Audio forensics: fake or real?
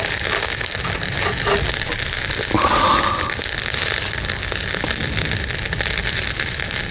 real